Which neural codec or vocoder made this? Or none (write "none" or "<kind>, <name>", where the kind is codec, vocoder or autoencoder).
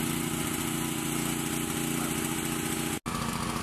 none